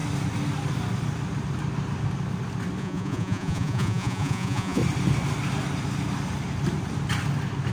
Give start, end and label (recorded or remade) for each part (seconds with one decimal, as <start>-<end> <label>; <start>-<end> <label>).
0.0-2.8 recorded; 2.8-4.8 remade; 4.8-7.7 recorded